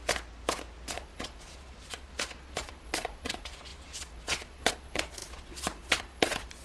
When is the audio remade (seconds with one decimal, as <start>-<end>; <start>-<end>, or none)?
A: 0.9-6.6